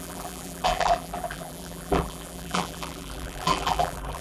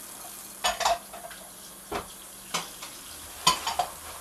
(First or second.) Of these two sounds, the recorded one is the second